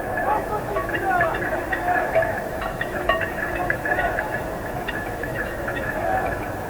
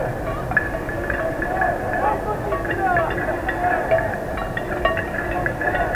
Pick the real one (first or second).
second